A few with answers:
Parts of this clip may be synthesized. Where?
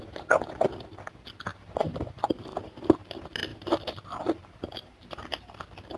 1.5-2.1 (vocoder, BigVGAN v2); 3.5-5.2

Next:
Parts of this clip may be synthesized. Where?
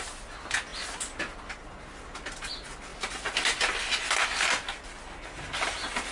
none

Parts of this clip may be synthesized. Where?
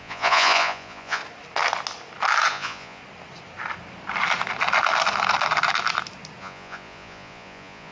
0.0-1.2 (vocoder, Vocos); 2.5-3.0; 6.4-7.9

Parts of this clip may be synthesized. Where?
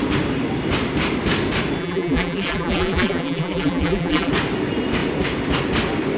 1.8-4.3 (vocoder, BigVGAN v2)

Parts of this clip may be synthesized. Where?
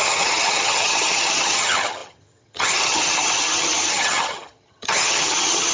0.0-5.7 (vocoder, HiFi-GAN)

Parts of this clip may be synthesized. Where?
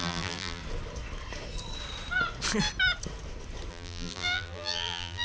0.0-0.6 (vocoder, BigVGAN v2); 3.7-5.2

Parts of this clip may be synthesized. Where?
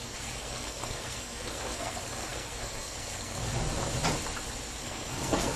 0.0-3.5 (codec, SNAC); 4.8-5.6